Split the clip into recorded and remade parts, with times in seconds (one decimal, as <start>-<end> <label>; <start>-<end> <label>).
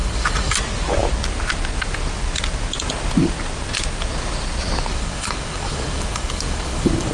0.0-0.6 remade; 0.6-4.9 recorded; 4.9-7.1 remade